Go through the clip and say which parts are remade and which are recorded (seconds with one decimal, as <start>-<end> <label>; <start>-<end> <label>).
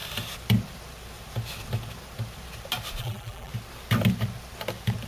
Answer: 0.0-3.0 recorded; 3.0-3.5 remade; 3.5-5.1 recorded